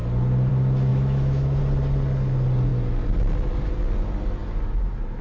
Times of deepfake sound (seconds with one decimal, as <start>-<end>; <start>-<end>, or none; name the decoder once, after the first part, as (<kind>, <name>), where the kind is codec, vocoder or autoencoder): 0.9-1.6 (autoencoder, DAC-VAE)

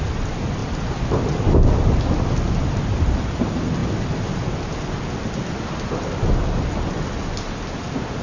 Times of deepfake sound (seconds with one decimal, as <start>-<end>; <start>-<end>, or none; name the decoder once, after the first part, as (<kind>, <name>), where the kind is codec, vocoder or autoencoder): none

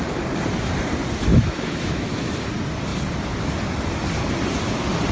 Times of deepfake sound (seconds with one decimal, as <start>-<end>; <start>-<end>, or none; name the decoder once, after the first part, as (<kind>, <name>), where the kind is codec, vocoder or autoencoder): 1.3-2.3 (autoencoder, DAC-VAE)

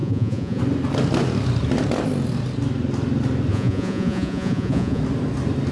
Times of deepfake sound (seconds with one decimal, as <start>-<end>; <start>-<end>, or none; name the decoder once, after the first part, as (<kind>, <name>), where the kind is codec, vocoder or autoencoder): 0.0-0.6 (vocoder, Vocos); 3.5-5.0

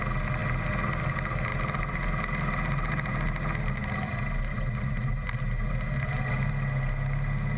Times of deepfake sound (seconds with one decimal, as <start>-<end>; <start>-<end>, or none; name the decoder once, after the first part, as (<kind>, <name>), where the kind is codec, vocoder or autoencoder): none

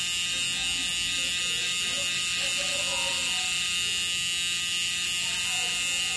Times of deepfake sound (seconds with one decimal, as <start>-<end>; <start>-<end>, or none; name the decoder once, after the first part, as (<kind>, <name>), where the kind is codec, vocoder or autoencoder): none

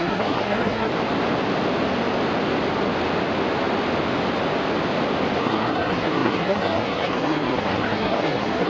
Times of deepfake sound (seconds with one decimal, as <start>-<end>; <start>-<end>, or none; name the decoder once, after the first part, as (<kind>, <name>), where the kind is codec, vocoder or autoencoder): 0.0-0.9 (codec, SNAC); 5.4-8.7